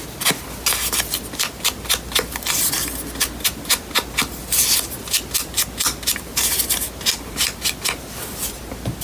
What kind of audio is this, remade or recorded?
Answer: recorded